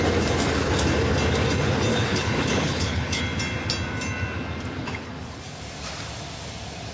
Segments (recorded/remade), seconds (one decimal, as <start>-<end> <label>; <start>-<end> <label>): 0.0-1.9 recorded; 1.9-3.2 remade; 3.2-4.8 recorded; 4.8-5.6 remade; 5.6-6.9 recorded

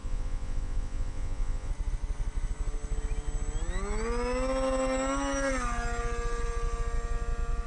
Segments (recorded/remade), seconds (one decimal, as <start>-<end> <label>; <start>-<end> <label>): 0.0-1.7 remade; 1.7-7.7 recorded

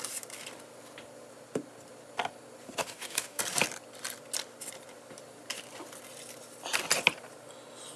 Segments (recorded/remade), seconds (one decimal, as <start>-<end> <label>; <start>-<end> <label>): 0.0-2.8 recorded; 2.8-3.4 remade; 3.4-8.0 recorded

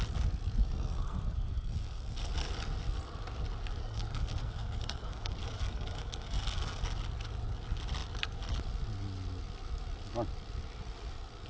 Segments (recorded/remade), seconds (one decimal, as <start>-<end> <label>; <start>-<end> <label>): 0.0-0.6 recorded; 0.6-2.3 remade; 2.3-3.8 recorded; 3.8-6.8 remade; 6.8-11.5 recorded